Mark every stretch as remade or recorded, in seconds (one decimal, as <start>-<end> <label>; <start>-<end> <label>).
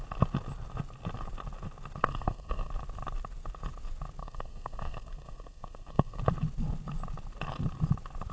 0.0-2.0 recorded; 2.0-2.7 remade; 2.7-4.2 recorded; 4.2-6.2 remade; 6.2-8.3 recorded